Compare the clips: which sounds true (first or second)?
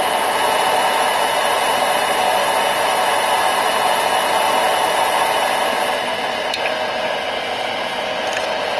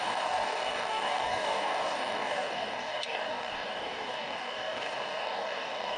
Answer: first